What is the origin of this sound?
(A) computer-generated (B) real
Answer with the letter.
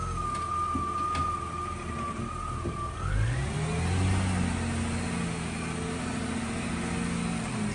B